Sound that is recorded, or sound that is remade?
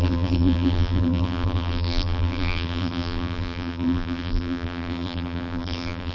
remade